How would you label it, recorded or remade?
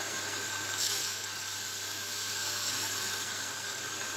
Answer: remade